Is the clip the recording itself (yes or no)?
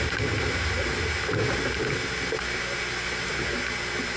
yes